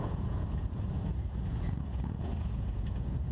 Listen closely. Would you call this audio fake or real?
fake